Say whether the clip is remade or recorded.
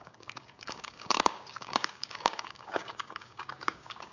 remade